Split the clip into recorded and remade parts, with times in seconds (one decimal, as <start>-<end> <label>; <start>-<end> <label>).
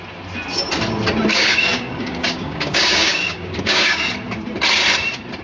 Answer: 0.0-1.3 recorded; 1.3-4.1 remade; 4.1-5.4 recorded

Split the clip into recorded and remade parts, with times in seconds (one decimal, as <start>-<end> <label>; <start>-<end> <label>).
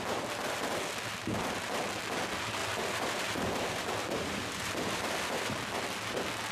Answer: 0.0-2.6 recorded; 2.6-5.5 remade; 5.5-6.5 recorded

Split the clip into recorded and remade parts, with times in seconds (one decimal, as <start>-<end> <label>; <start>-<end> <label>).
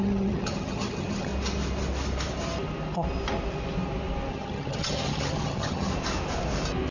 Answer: 0.0-1.3 remade; 1.3-4.3 recorded; 4.3-5.9 remade; 5.9-6.9 recorded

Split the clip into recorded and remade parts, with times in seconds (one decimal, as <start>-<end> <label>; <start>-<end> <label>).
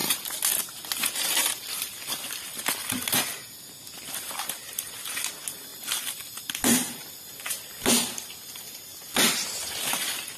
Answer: 0.0-10.4 recorded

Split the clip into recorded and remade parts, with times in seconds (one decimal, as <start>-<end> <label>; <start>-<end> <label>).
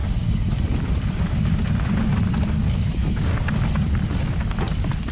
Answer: 0.0-5.1 recorded